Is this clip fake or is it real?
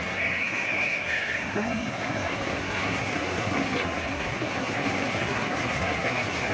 fake